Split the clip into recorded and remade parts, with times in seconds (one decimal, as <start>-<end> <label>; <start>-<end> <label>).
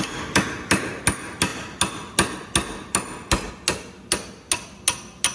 0.0-5.3 recorded